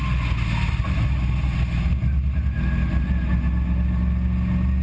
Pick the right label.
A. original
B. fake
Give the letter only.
A